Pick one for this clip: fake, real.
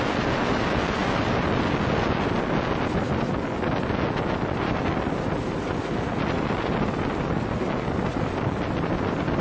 real